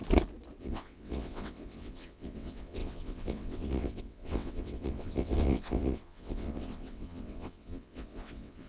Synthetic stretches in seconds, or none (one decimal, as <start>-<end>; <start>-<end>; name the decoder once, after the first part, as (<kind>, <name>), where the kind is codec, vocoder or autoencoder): 0.6-8.7 (vocoder, WaveNeXt)